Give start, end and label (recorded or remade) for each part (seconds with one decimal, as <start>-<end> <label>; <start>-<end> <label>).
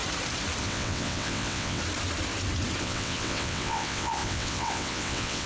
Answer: 0.0-0.6 recorded; 0.6-1.8 remade; 1.8-2.8 recorded; 2.8-5.5 remade